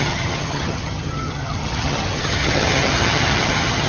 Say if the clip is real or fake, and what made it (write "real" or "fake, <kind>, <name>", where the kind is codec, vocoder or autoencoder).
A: fake, vocoder, HiFi-GAN